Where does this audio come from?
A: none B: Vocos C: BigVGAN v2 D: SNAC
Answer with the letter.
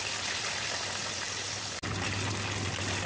A